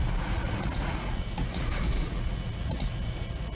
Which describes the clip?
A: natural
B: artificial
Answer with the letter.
B